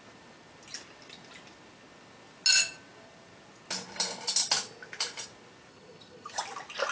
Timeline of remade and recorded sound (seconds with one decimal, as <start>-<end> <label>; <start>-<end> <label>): 0.0-5.7 recorded; 5.7-6.4 remade; 6.4-6.9 recorded